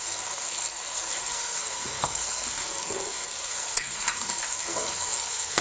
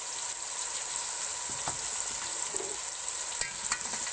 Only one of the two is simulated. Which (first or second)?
first